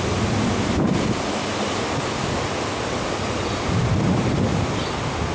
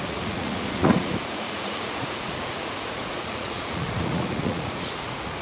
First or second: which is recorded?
first